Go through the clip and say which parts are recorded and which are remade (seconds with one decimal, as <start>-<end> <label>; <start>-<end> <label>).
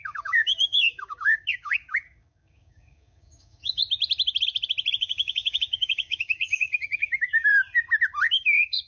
0.0-3.8 remade; 3.8-5.0 recorded; 5.0-7.5 remade; 7.5-8.3 recorded; 8.3-8.9 remade